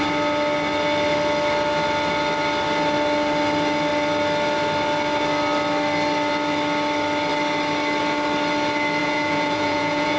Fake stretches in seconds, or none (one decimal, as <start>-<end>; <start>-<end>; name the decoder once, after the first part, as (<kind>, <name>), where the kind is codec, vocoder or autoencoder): 9.0-10.2 (vocoder, Vocos)